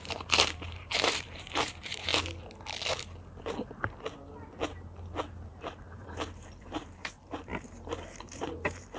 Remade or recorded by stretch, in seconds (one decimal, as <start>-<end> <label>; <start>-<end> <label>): 0.0-2.1 remade; 2.1-5.5 recorded; 5.5-9.0 remade